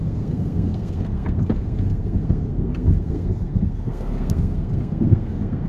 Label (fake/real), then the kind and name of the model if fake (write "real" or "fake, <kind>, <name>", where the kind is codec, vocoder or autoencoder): fake, codec, SNAC